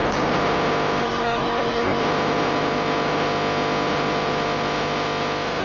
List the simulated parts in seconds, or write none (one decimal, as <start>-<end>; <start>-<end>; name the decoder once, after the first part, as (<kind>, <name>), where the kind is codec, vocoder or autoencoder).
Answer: 1.0-2.0 (codec, SNAC)